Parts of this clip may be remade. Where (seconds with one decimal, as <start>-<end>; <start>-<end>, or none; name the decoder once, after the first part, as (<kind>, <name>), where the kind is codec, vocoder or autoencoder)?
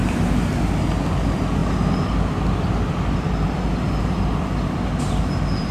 0.0-0.6 (vocoder, BigVGAN v2)